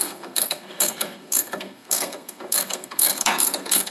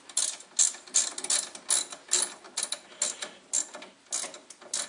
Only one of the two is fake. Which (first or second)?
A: first